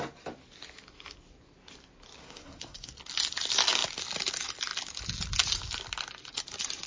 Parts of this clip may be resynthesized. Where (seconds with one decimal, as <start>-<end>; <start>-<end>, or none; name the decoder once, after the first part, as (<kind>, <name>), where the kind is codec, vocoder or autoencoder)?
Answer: 2.2-2.9 (codec, SNAC)